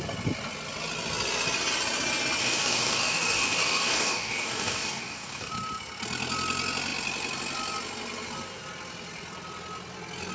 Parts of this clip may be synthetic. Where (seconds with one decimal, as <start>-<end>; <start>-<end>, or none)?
2.4-5.5